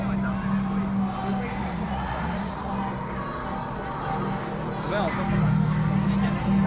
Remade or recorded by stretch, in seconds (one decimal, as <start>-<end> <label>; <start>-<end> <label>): 0.0-1.6 recorded; 1.6-2.7 remade; 2.7-6.7 recorded